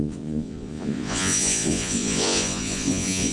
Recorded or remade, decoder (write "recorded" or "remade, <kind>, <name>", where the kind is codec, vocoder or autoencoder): remade, vocoder, Vocos